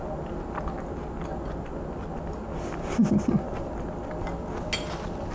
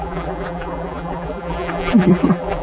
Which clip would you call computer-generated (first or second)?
second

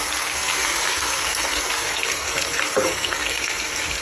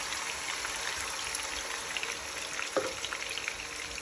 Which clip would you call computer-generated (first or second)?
first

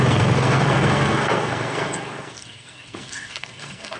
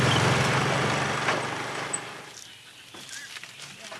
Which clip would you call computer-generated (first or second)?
first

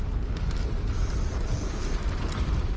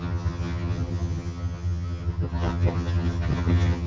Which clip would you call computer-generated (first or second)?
second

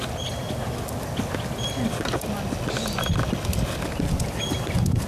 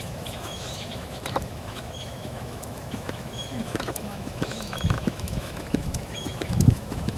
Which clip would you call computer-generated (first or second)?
second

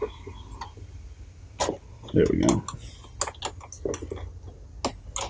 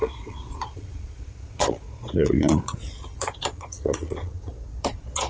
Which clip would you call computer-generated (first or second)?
second